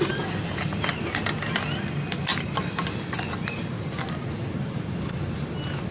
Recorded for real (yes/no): yes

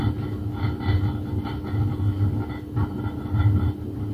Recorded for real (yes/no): yes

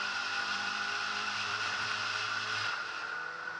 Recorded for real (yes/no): no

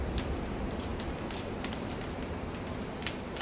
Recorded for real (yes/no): yes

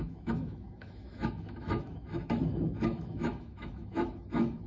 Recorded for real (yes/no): no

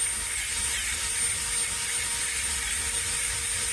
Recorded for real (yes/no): yes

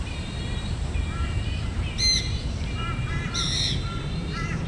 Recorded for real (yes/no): no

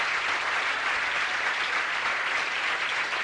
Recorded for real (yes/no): no